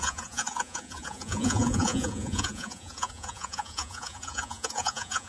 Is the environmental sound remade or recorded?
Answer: remade